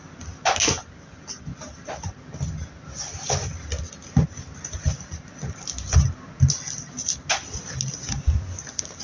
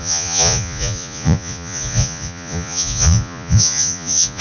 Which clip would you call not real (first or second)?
second